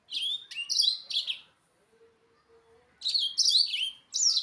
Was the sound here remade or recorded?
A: recorded